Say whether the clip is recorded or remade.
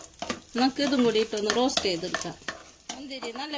recorded